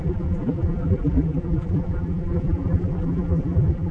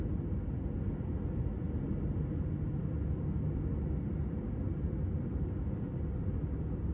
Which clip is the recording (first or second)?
second